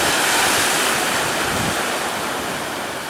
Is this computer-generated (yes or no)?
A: no